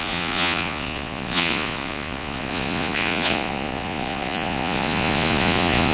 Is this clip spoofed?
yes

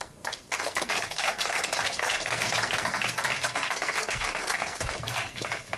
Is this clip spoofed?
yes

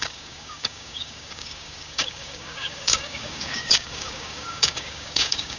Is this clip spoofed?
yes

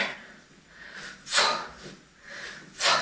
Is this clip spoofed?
no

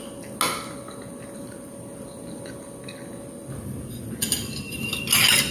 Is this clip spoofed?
no